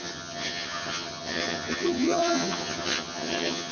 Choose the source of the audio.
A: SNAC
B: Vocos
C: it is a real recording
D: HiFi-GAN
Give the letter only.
D